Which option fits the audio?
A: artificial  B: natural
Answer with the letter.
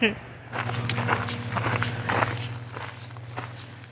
B